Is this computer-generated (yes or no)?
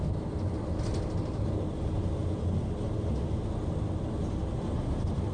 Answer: no